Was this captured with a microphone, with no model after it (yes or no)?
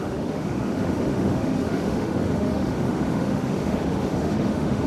no